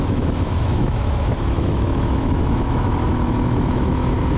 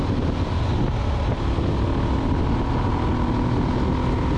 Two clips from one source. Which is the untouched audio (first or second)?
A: second